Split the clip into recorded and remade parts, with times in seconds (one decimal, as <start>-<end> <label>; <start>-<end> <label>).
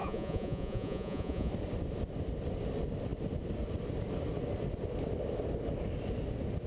0.0-1.5 remade; 1.5-6.7 recorded